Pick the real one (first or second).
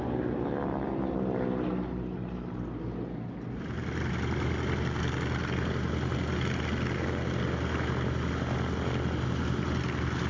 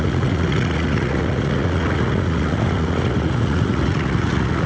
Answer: first